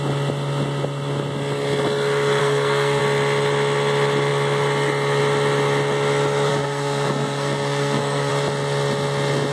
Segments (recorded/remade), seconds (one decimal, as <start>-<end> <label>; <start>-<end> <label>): 0.0-2.4 recorded; 2.4-3.0 remade; 3.0-6.5 recorded; 6.5-8.3 remade; 8.3-9.5 recorded